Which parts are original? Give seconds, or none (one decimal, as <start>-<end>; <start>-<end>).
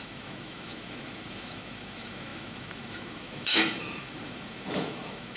none